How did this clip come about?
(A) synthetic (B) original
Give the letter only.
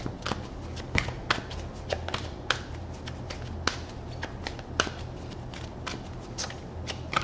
B